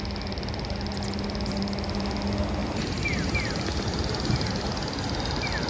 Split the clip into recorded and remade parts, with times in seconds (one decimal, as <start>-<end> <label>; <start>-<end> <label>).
0.0-5.7 recorded